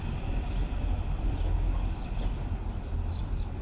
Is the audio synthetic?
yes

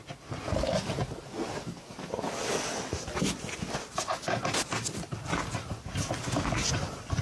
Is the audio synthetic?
no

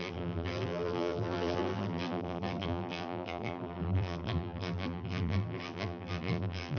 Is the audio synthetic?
yes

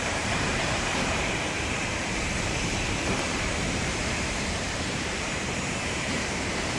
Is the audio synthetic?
yes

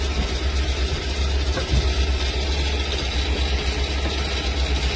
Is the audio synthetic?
no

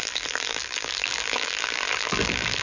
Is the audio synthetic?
yes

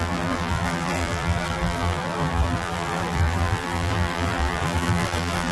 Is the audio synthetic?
yes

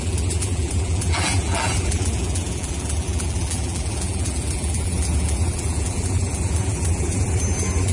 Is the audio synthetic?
yes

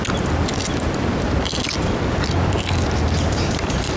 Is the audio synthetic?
no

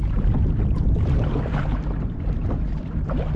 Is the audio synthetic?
yes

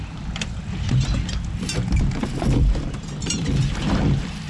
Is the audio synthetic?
yes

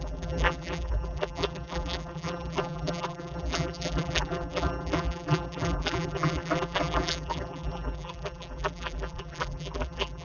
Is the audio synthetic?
yes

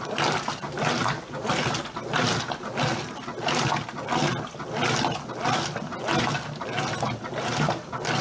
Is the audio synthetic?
no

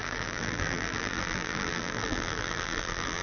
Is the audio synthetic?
yes